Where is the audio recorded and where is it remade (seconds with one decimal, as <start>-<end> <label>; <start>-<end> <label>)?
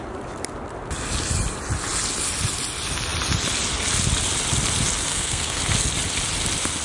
0.0-5.1 recorded; 5.1-5.6 remade; 5.6-6.8 recorded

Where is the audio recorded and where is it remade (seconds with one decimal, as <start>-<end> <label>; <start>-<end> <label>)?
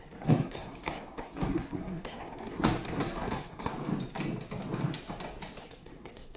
0.0-3.7 remade; 3.7-5.6 recorded; 5.6-6.4 remade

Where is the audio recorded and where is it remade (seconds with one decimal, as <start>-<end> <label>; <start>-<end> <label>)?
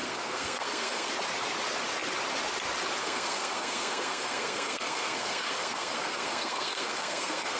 0.0-1.1 remade; 1.1-3.0 recorded; 3.0-7.6 remade